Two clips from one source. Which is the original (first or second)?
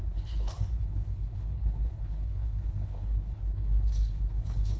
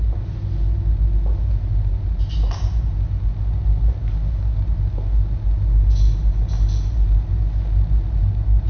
second